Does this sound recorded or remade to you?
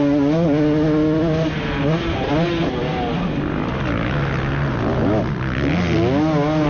recorded